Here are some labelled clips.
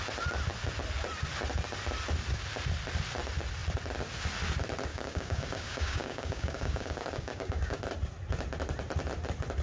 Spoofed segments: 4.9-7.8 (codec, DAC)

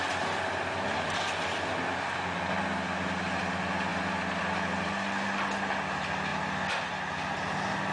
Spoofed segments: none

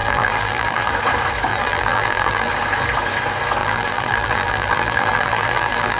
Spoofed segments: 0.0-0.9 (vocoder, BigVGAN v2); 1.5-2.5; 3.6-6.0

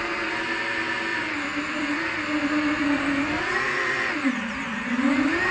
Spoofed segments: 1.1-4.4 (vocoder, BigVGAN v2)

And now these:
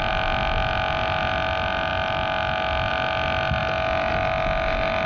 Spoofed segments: none

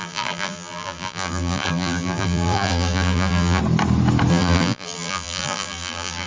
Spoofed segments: 0.0-3.6 (vocoder, BigVGAN v2); 4.3-6.3

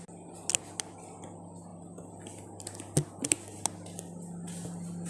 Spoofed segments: none

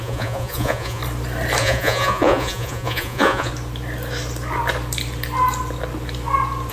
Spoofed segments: 0.0-1.0 (vocoder, Vocos); 1.6-3.5